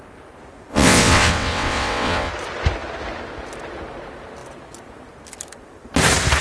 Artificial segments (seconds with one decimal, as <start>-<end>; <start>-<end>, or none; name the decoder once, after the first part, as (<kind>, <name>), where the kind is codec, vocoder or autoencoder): 0.7-2.3 (vocoder, WaveNeXt)